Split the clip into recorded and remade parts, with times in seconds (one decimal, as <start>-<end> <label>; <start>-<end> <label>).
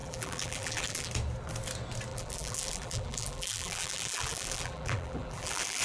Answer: 0.0-1.1 remade; 1.1-2.1 recorded; 2.1-5.8 remade